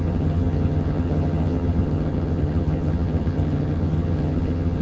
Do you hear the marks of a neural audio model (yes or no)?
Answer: yes